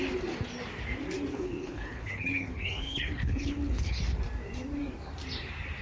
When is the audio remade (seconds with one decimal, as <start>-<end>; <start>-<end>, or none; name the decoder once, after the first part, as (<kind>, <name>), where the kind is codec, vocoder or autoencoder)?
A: 1.3-4.0 (codec, HILCodec)